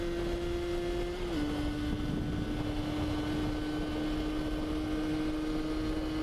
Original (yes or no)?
yes